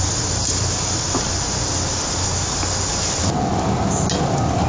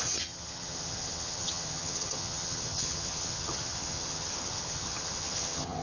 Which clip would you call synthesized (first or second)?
second